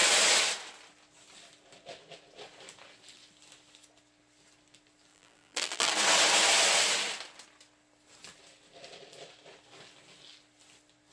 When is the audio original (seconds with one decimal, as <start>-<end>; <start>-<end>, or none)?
0.0-5.1; 5.9-11.1